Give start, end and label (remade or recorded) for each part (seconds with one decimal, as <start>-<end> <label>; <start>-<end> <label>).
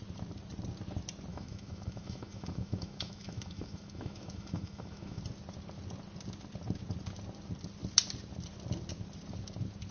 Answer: 0.0-1.3 recorded; 1.3-5.2 remade; 5.2-9.9 recorded